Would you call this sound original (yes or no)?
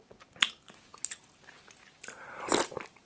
yes